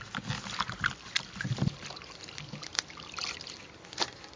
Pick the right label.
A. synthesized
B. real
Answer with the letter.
B